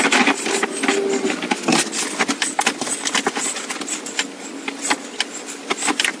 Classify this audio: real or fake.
real